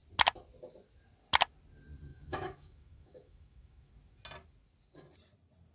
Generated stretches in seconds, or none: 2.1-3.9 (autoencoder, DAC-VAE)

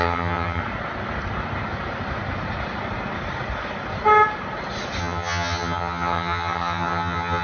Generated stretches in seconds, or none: 0.0-0.6 (vocoder, HiFi-GAN); 5.0-7.4